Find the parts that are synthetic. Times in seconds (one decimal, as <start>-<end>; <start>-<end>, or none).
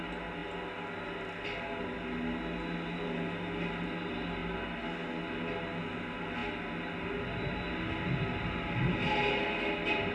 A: none